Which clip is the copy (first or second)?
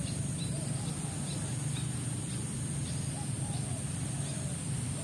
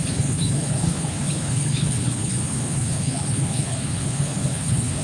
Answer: second